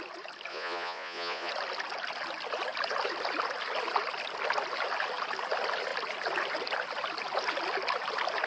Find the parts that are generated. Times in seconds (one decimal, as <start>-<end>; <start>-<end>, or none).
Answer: 0.5-1.5